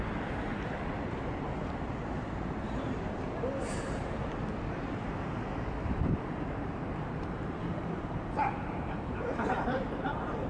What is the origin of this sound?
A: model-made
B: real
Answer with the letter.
A